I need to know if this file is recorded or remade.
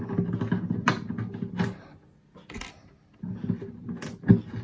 recorded